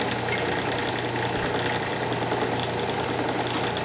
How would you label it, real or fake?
real